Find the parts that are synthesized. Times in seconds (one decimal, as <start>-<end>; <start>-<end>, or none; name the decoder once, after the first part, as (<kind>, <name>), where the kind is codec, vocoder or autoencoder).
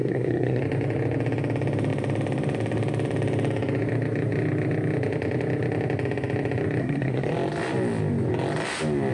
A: 0.0-0.6 (codec, SNAC); 6.8-7.3